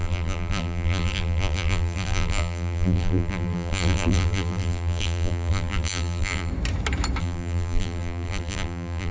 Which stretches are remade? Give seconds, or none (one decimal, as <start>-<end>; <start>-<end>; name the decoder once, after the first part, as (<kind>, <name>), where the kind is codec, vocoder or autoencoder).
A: 0.0-6.5 (vocoder, BigVGAN v2); 7.2-9.1